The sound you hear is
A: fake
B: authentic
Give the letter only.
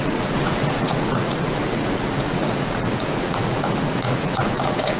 A